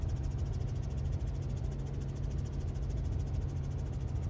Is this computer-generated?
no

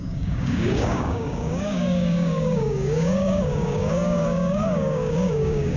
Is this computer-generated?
yes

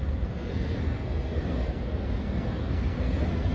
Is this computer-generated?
yes